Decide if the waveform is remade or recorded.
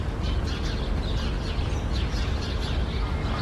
recorded